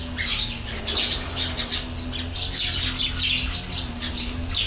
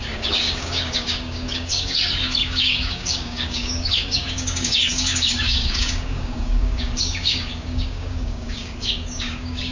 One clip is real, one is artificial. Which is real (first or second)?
first